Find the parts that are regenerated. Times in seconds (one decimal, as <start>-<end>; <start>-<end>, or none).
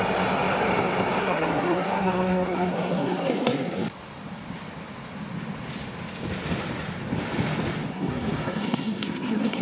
1.2-3.9; 7.9-9.6